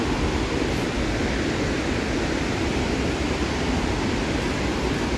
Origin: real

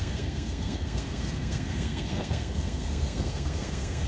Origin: fake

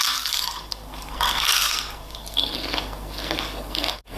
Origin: fake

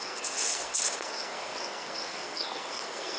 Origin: fake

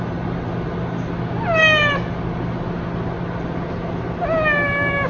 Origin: real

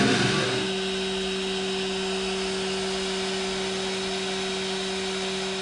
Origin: real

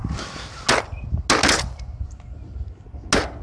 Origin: real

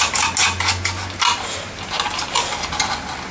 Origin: real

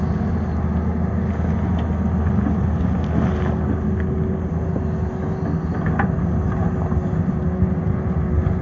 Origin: real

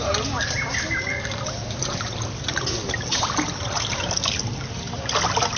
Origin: real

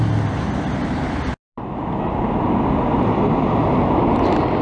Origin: real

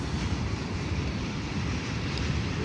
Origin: real